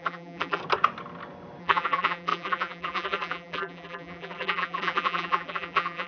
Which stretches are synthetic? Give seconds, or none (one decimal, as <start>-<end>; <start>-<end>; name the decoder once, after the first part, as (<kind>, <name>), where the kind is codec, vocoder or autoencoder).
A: 0.0-0.6 (vocoder, BigVGAN v2); 1.6-6.1